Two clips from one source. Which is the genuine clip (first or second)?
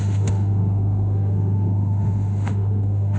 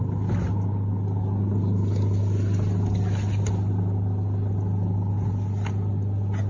second